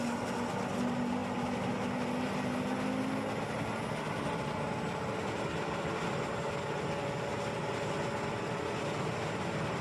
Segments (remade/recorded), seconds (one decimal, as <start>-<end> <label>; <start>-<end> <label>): 0.0-9.8 recorded